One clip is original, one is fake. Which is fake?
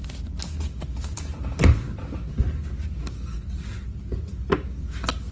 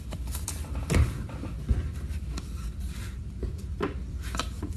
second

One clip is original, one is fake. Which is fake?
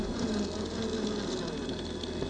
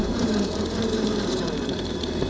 second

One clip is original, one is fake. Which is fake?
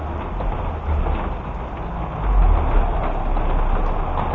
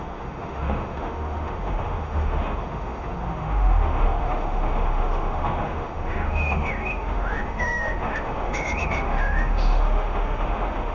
second